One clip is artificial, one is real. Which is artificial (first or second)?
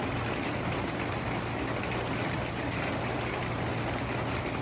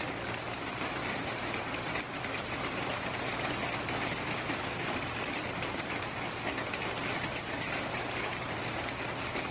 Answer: second